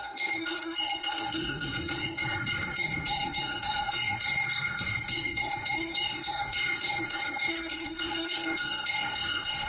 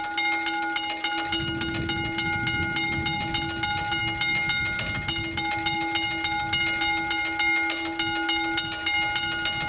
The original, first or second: second